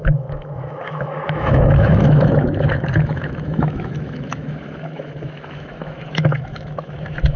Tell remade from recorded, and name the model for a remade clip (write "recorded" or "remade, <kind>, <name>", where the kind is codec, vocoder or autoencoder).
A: remade, autoencoder, DAC-VAE